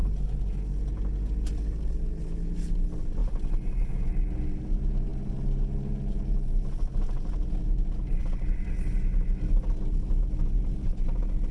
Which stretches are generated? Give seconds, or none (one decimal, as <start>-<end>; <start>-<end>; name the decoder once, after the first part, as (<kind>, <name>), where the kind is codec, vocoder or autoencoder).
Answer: none